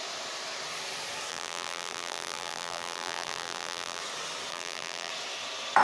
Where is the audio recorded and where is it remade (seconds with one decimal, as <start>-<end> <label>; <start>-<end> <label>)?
0.0-1.3 recorded; 1.3-4.0 remade; 4.0-4.5 recorded; 4.5-5.1 remade; 5.1-5.8 recorded